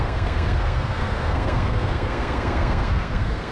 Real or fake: fake